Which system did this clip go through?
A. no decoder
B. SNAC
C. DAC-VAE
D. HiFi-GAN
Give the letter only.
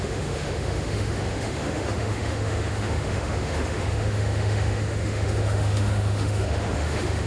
C